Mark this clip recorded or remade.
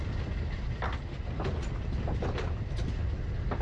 recorded